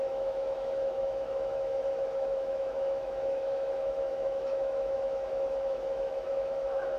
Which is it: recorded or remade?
remade